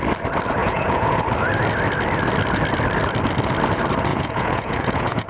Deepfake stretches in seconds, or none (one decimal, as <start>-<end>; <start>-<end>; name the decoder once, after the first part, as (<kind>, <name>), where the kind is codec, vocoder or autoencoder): 0.6-1.2 (vocoder, Vocos); 4.1-5.3